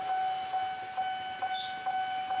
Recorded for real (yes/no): yes